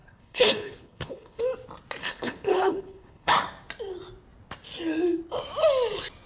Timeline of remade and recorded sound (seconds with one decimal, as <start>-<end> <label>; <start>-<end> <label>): 0.0-1.4 remade; 1.4-2.0 recorded; 2.0-3.3 remade; 3.3-6.3 recorded